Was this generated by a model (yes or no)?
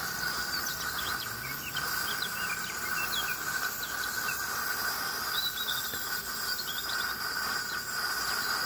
no